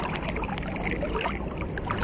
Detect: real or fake real